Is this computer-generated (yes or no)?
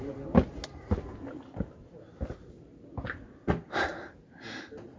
no